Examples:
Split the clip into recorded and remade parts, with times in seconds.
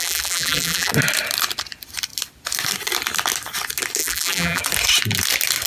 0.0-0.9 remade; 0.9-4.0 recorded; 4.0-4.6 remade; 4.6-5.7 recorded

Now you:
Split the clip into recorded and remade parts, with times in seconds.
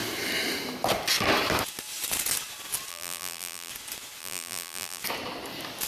0.0-2.9 recorded; 2.9-3.7 remade; 3.7-4.2 recorded; 4.2-5.0 remade; 5.0-5.9 recorded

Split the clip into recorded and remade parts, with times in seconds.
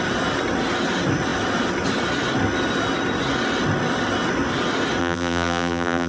0.0-5.0 recorded; 5.0-6.1 remade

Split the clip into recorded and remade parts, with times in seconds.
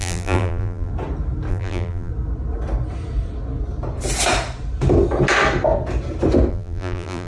0.0-0.9 remade; 0.9-1.5 recorded; 1.5-2.1 remade; 2.1-6.5 recorded; 6.5-7.3 remade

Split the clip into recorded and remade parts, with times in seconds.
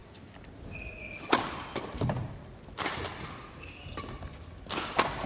0.0-5.3 recorded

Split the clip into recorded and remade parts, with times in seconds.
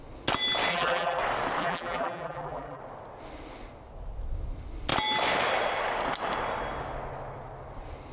0.0-0.7 recorded; 0.7-1.2 remade; 1.2-1.6 recorded; 1.6-2.8 remade; 2.8-8.1 recorded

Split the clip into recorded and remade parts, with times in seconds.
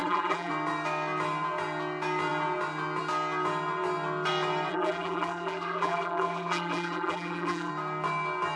0.0-0.5 remade; 0.5-4.7 recorded; 4.7-7.7 remade; 7.7-8.6 recorded